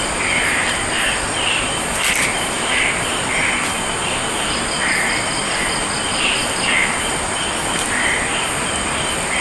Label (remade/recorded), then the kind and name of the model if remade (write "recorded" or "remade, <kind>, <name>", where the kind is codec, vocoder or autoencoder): recorded